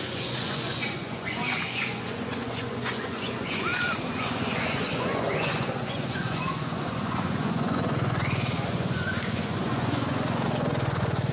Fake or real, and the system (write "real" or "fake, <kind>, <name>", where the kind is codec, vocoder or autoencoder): fake, vocoder, Vocos